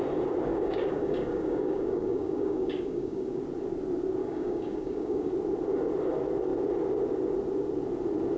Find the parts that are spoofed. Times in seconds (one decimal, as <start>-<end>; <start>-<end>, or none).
0.5-3.4; 4.2-5.3